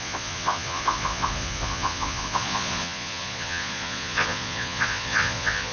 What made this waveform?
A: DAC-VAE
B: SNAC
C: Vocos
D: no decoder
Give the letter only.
C